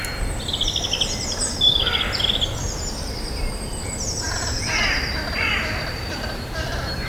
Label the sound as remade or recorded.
recorded